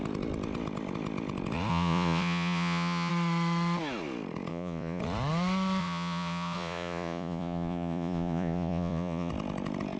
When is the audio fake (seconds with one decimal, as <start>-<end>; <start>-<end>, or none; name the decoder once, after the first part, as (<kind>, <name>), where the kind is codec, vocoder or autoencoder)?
1.7-3.1 (vocoder, Vocos); 4.5-5.0; 5.8-9.3